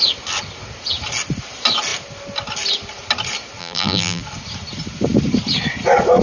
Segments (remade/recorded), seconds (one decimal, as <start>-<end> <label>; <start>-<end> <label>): 0.0-3.6 recorded; 3.6-4.2 remade; 4.2-6.2 recorded